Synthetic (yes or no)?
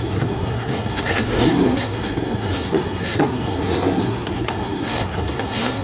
yes